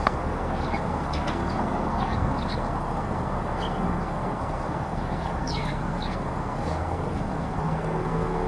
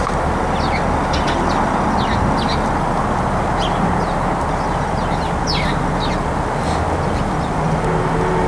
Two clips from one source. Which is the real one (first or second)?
second